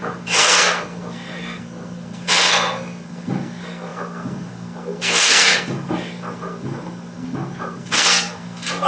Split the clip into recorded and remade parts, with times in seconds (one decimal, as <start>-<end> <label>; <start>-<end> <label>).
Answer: 0.0-8.9 remade